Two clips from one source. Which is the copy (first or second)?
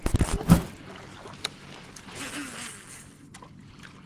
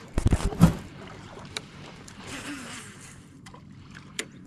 second